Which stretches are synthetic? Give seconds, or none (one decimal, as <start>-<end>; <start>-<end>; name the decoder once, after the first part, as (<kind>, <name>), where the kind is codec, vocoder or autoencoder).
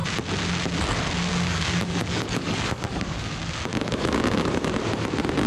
1.3-3.3 (codec, DAC); 3.7-4.7